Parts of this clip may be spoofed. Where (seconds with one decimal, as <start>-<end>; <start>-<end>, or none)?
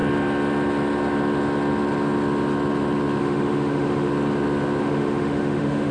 3.2-4.1; 4.8-5.9